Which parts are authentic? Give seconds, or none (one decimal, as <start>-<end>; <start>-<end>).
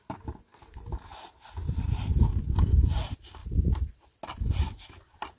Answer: 0.0-3.4; 4.0-5.4